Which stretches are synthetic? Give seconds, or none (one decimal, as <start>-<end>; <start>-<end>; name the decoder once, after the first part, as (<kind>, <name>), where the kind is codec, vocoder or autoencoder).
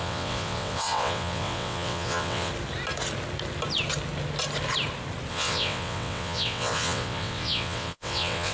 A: 0.0-2.5 (vocoder, WaveNeXt); 5.3-8.5